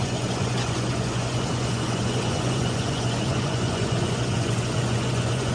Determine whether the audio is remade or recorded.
remade